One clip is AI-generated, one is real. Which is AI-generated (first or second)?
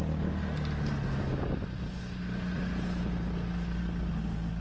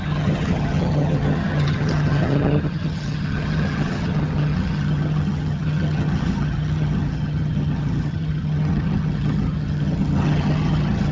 second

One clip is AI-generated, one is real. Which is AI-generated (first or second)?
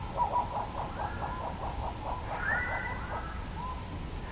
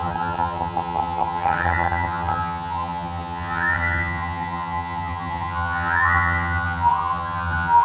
second